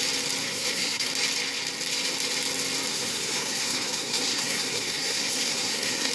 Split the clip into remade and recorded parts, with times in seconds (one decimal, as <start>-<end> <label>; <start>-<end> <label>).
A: 0.0-0.4 recorded; 0.4-1.1 remade; 1.1-2.9 recorded; 2.9-6.1 remade